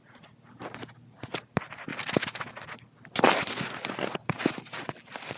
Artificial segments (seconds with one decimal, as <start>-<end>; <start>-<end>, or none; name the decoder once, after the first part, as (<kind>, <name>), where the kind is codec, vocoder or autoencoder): none